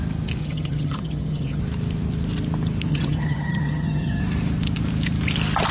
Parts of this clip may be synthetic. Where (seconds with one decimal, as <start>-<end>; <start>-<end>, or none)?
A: 0.4-1.6; 2.9-4.2